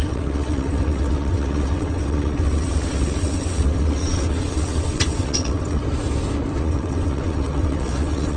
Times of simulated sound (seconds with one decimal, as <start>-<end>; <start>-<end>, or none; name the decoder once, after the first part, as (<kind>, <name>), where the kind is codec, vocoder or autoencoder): 0.0-5.8 (vocoder, WaveNeXt); 6.6-8.4